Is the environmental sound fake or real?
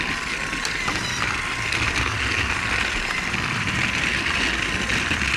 real